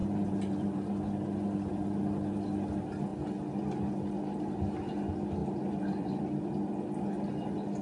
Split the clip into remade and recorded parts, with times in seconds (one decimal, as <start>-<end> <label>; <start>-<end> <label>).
0.0-1.7 remade; 1.7-5.4 recorded; 5.4-6.2 remade; 6.2-7.8 recorded